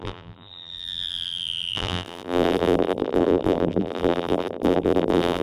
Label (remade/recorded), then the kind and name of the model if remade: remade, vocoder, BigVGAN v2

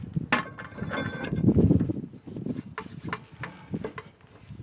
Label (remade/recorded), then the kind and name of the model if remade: recorded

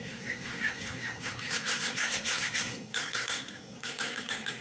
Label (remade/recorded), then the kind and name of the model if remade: remade, codec, SNAC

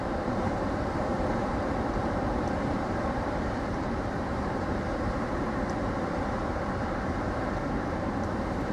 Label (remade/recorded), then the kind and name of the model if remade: remade, vocoder, BigVGAN v2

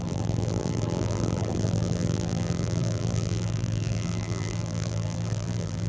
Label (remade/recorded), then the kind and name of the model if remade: remade, vocoder, BigVGAN v2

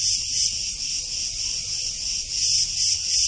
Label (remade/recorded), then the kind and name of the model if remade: recorded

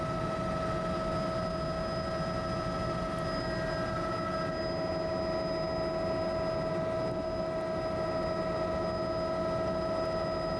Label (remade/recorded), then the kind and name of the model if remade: recorded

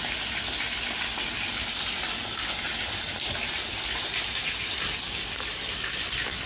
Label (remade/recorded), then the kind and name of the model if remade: recorded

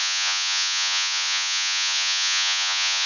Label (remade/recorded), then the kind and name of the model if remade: remade, vocoder, Vocos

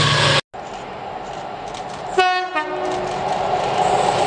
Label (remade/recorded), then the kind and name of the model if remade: recorded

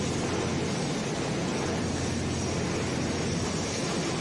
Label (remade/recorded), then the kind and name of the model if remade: recorded